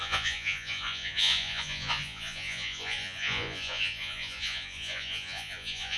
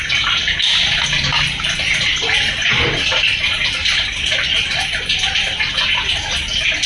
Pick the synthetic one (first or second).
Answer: first